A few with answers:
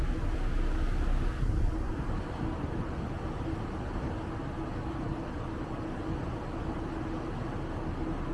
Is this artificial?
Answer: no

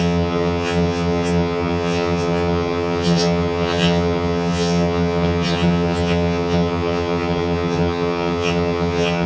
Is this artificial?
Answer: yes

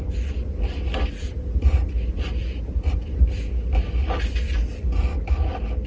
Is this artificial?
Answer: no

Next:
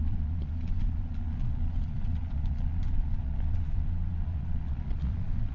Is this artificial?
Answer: yes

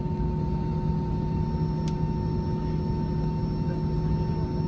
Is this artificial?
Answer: no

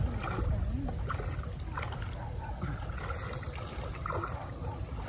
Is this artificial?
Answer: no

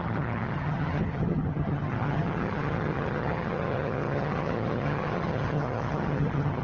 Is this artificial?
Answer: yes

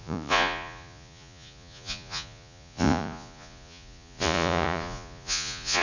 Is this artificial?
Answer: yes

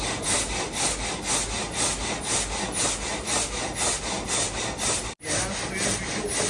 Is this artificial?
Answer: no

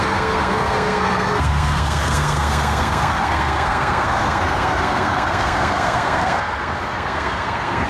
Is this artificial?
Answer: yes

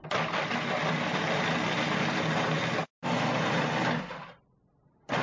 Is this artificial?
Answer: no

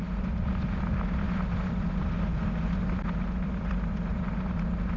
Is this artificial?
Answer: no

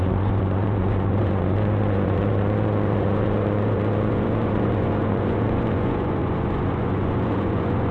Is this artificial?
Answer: yes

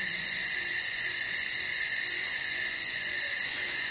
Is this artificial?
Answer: yes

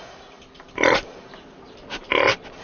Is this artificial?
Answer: no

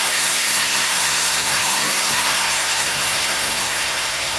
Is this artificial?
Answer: yes